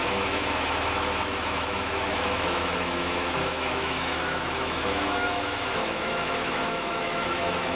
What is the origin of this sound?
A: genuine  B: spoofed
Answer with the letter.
B